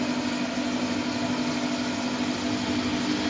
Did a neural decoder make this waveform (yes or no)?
no